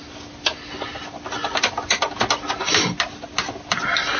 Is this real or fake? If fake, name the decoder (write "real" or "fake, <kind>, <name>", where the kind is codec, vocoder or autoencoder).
real